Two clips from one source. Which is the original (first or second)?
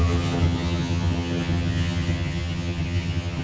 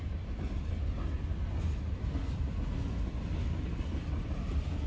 second